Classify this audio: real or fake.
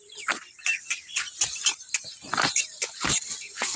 real